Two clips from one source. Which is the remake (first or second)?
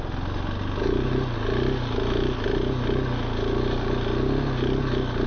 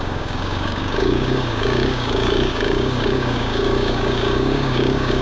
second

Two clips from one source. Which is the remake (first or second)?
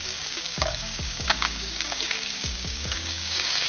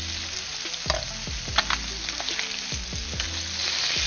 first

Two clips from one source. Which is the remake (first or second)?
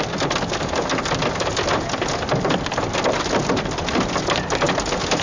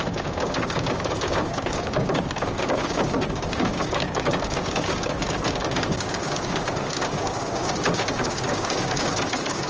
second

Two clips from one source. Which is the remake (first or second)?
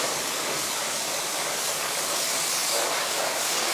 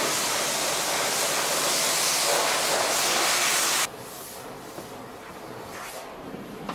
first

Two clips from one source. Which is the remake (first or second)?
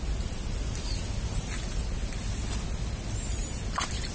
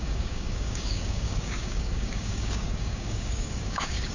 second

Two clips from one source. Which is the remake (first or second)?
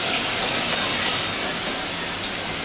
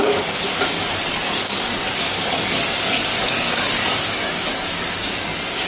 second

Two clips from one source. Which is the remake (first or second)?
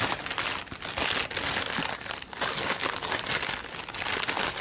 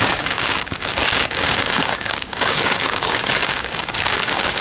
second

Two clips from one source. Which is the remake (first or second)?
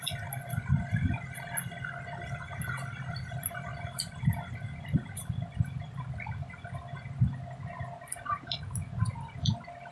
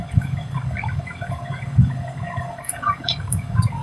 second